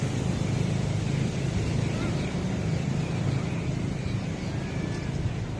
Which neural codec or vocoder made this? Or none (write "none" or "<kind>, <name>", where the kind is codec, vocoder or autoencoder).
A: none